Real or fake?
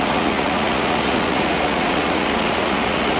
fake